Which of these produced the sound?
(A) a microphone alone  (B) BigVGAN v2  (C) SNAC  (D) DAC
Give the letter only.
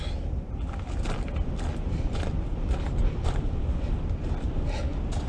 A